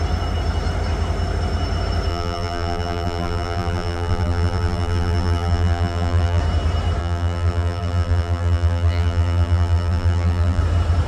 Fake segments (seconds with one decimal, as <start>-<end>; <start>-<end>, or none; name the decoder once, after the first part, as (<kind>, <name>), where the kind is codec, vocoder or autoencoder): 2.1-6.4 (vocoder, BigVGAN v2); 7.0-10.6